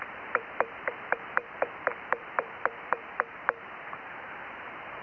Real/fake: fake